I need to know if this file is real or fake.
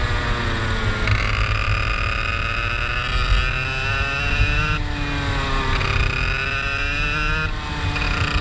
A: real